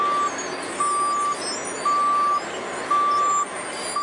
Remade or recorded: recorded